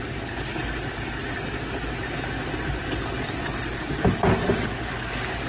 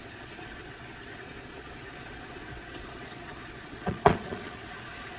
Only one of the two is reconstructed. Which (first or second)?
second